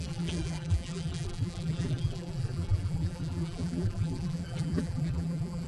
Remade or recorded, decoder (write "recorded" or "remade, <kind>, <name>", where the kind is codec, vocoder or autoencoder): remade, vocoder, BigVGAN v2